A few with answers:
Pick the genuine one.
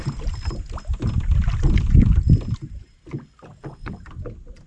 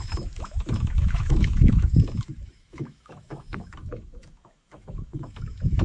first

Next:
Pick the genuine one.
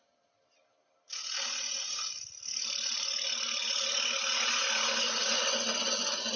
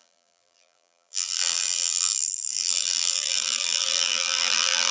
first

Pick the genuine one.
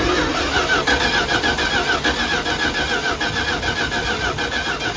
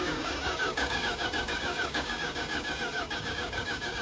first